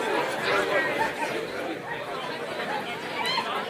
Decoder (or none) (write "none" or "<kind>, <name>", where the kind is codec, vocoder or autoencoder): none